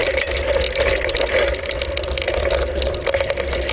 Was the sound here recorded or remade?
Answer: recorded